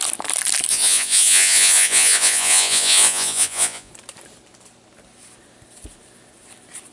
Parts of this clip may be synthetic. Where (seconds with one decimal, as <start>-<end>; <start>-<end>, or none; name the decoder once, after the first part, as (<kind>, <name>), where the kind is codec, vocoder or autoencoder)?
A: 0.7-3.9 (vocoder, Vocos)